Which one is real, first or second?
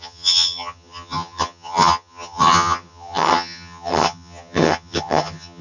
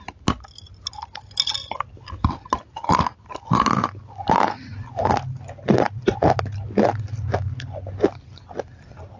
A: second